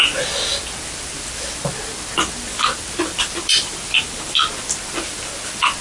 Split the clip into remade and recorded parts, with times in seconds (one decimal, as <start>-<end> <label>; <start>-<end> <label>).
0.0-5.8 recorded